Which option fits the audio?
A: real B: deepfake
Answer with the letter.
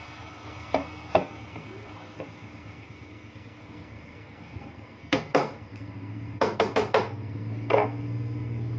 B